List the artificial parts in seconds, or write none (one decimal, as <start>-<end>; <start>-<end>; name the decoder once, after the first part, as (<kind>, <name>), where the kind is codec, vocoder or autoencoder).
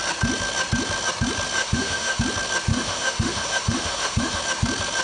1.6-2.2 (autoencoder, DAC-VAE); 2.7-4.4